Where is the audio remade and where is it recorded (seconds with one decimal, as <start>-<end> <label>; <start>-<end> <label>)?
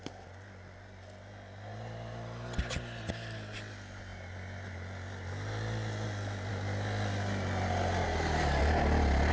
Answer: 0.0-9.3 recorded